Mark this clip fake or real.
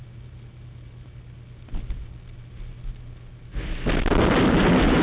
real